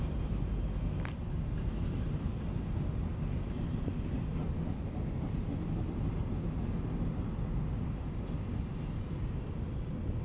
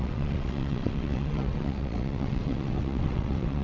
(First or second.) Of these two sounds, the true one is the first